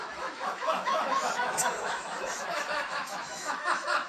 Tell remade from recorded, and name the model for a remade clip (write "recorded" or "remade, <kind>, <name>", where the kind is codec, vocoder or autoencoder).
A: remade, autoencoder, DAC-VAE